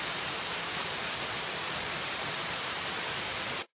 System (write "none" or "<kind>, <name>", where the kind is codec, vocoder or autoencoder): none